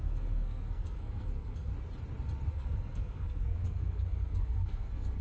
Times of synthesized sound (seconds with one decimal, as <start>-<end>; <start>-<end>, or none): 0.0-1.7; 2.5-5.2